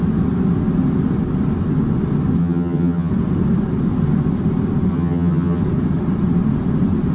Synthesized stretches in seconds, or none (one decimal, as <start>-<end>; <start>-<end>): 2.4-3.1; 4.9-5.6